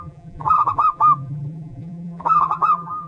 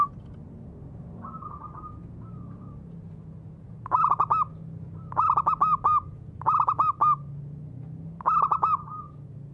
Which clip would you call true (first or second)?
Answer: second